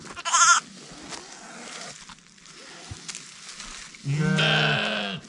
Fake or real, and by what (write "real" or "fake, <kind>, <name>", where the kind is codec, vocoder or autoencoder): real